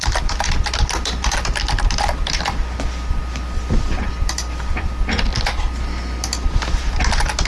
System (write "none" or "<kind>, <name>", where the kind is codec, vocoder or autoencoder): vocoder, BigVGAN v2